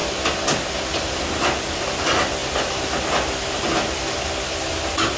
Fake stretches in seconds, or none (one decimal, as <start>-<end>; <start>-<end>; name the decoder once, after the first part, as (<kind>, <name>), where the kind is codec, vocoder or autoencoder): none